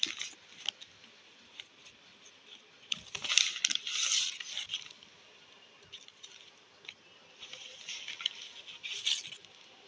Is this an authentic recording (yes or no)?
yes